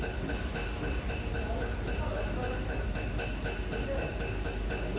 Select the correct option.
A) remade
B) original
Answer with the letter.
B